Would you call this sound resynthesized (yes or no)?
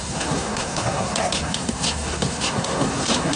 yes